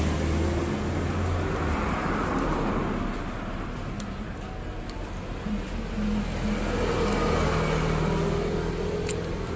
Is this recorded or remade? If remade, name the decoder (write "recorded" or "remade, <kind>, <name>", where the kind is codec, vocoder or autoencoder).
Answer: recorded